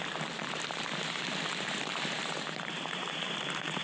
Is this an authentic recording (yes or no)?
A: no